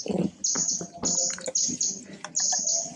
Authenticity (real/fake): real